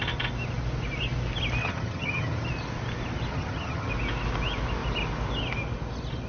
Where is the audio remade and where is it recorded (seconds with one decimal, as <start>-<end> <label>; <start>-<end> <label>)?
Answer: 0.0-1.6 recorded; 1.6-2.5 remade; 2.5-3.3 recorded; 3.3-3.9 remade; 3.9-6.3 recorded